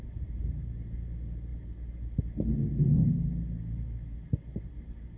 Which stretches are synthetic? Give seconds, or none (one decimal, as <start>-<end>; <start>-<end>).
none